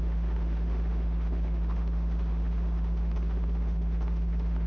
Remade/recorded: remade